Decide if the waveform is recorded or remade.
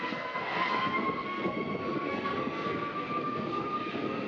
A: remade